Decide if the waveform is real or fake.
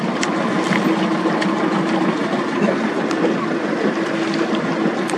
real